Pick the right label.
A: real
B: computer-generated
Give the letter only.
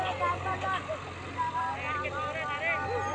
A